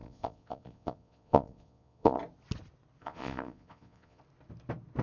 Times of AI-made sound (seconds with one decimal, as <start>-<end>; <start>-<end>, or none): 0.0-2.2; 3.0-4.2